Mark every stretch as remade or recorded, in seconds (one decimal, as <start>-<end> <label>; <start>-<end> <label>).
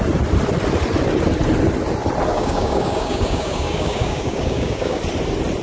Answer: 0.0-2.3 recorded; 2.3-5.0 remade; 5.0-5.6 recorded